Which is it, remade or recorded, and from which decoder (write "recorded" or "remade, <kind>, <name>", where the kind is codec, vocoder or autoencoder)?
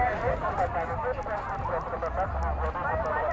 recorded